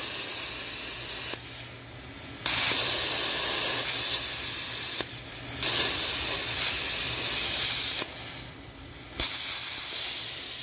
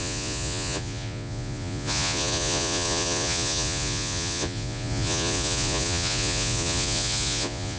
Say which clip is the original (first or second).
first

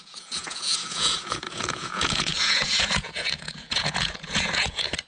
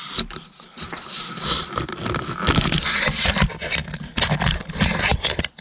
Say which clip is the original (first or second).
second